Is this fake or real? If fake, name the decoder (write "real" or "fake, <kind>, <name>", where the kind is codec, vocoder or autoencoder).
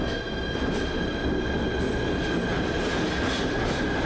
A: real